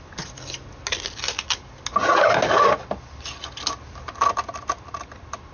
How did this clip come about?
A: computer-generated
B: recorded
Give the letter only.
B